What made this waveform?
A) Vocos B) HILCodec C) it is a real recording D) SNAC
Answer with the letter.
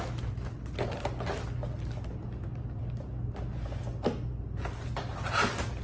C